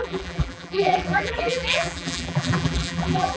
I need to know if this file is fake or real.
fake